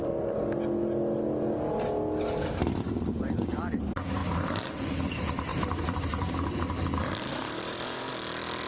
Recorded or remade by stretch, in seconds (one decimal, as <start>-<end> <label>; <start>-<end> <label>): 0.0-2.7 recorded; 2.7-3.8 remade; 3.8-5.5 recorded; 5.5-6.6 remade; 6.6-7.0 recorded; 7.0-8.1 remade; 8.1-8.7 recorded